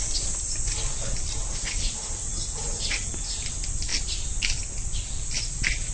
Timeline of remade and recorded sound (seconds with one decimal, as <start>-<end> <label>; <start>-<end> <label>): 0.0-1.5 recorded; 1.5-3.1 remade; 3.1-5.9 recorded